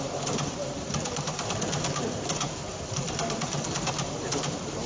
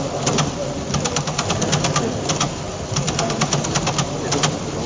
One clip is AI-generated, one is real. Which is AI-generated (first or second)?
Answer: first